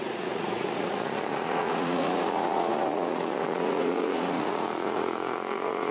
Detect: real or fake fake